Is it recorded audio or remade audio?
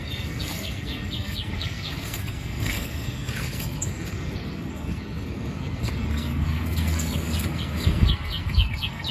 remade